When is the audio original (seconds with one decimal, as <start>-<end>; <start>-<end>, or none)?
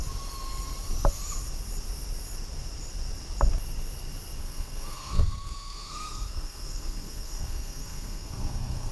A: 0.0-4.4